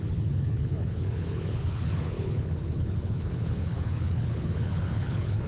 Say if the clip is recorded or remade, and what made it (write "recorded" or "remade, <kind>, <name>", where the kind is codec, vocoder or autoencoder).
remade, codec, HILCodec